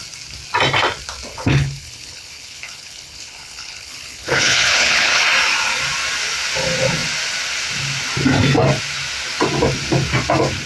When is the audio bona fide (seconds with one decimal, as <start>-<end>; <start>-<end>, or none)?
0.0-1.3; 5.2-10.7